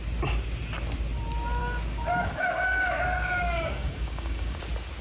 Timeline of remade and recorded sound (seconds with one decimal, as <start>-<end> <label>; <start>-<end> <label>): 0.0-1.6 recorded; 1.6-4.6 remade; 4.6-5.0 recorded

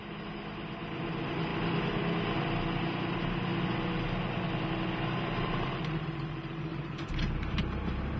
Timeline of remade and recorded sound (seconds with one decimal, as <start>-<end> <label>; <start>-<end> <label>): 0.0-1.0 recorded; 1.0-1.5 remade; 1.5-5.4 recorded; 5.4-8.2 remade

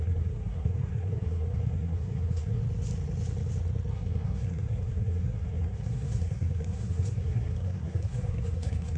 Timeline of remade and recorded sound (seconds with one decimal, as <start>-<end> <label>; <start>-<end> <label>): 0.0-2.6 remade; 2.6-3.9 recorded; 3.9-9.0 remade